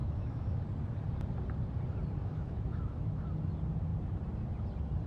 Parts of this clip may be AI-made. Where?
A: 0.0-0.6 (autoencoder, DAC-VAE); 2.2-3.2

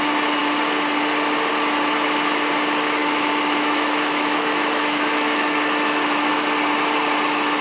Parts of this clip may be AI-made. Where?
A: 3.0-6.3 (autoencoder, DAC-VAE)

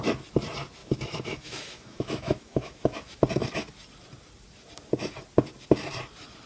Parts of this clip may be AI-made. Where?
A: 0.8-3.2 (autoencoder, DAC-VAE)

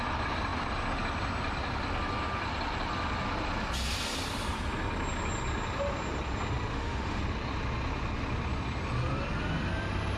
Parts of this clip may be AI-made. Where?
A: 6.7-7.2 (autoencoder, DAC-VAE)